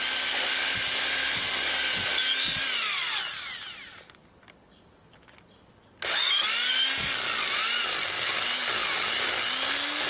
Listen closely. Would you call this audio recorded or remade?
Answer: recorded